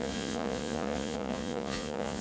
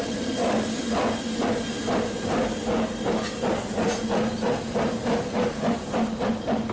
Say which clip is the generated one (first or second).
first